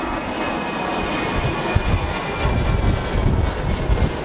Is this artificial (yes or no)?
no